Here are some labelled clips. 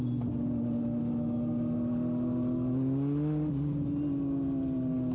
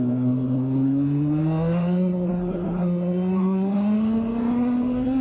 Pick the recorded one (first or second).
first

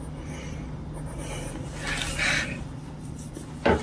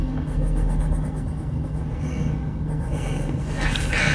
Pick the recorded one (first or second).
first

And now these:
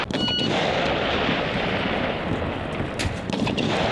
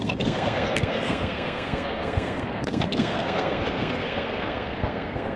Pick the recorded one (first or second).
first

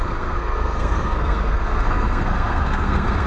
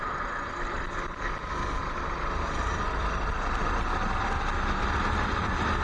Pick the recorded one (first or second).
second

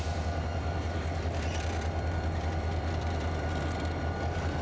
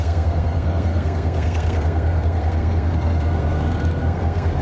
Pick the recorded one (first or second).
first